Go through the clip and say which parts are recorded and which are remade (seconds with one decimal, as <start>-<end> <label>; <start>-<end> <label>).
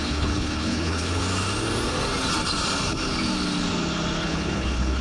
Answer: 0.0-1.2 remade; 1.2-4.2 recorded; 4.2-5.0 remade